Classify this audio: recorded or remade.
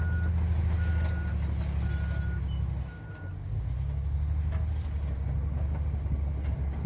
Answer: recorded